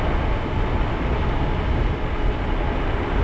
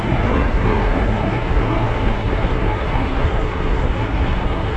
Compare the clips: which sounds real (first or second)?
first